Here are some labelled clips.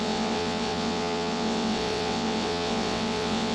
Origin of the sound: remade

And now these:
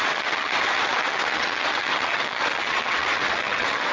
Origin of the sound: remade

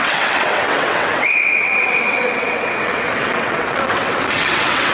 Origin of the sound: remade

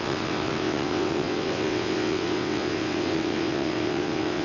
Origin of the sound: remade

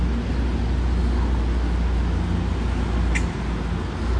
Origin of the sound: recorded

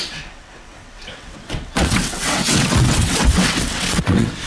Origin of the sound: remade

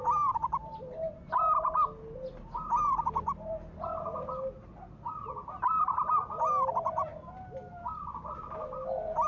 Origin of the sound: recorded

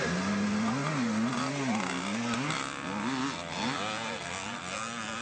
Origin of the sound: recorded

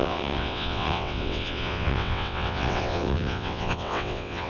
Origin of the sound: remade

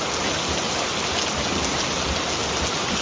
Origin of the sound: recorded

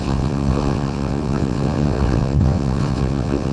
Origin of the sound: remade